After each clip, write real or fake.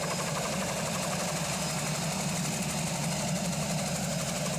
real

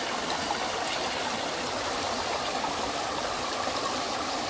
real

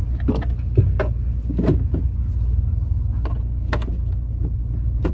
real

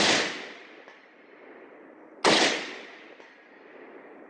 real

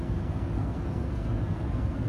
fake